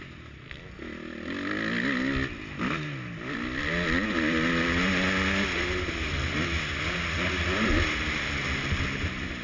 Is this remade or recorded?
recorded